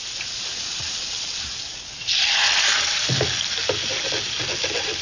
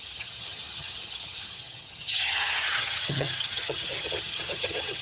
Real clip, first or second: first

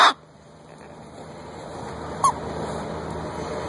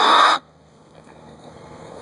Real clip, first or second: first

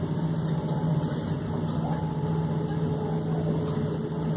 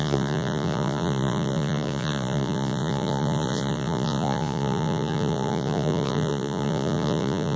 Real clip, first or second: first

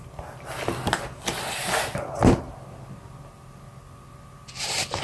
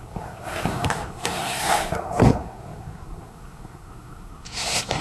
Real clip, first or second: first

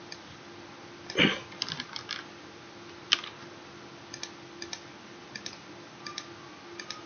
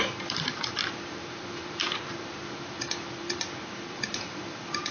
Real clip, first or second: first